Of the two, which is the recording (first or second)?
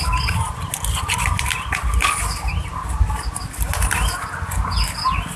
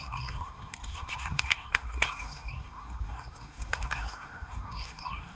first